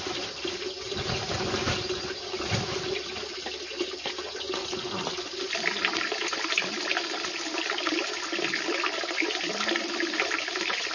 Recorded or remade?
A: recorded